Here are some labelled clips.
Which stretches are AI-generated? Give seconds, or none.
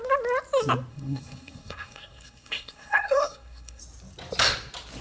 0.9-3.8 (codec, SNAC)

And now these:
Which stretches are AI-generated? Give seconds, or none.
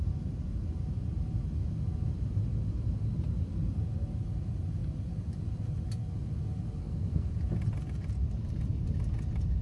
6.8-7.3 (codec, SNAC)